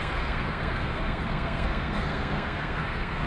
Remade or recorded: remade